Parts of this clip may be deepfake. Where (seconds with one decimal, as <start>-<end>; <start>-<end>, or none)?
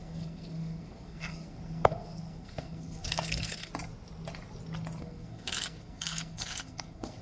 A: 0.0-3.7; 5.0-7.2